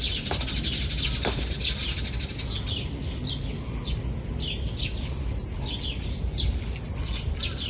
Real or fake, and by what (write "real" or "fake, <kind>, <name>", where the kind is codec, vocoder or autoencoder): real